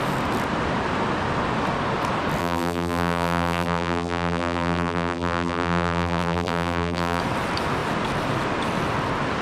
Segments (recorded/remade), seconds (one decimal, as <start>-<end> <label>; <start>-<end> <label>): 0.0-2.4 recorded; 2.4-7.2 remade; 7.2-9.4 recorded